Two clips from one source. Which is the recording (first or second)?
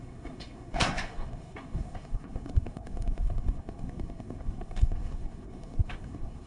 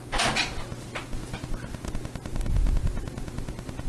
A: second